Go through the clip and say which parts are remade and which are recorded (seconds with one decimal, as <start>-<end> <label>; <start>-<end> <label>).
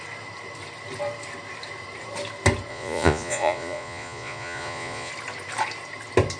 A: 0.0-2.7 recorded; 2.7-5.1 remade; 5.1-6.4 recorded